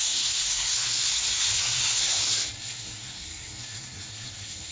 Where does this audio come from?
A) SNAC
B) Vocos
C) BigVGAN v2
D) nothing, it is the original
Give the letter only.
A